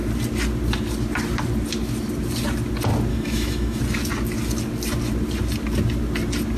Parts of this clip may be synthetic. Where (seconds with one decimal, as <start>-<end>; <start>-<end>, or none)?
3.1-3.8